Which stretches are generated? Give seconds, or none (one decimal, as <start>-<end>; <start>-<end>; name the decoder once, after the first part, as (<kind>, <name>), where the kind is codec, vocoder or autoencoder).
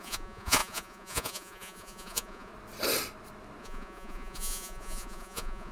0.0-2.5 (vocoder, Vocos); 3.6-5.7